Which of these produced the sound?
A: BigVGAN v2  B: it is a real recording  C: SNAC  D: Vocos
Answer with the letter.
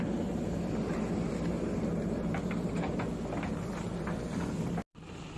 B